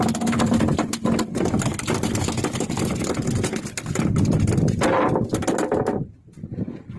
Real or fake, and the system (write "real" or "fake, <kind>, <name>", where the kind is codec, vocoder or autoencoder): real